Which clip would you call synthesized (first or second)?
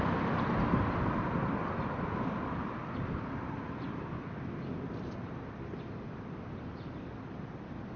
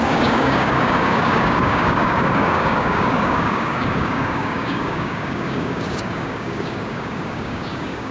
second